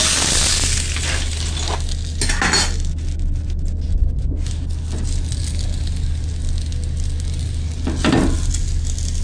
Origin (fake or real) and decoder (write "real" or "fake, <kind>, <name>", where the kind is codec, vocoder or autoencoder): real